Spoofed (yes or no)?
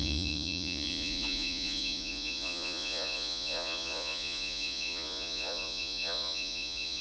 yes